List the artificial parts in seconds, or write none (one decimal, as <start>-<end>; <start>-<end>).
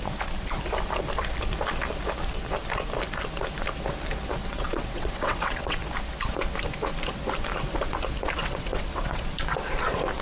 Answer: 4.4-5.8; 8.4-9.2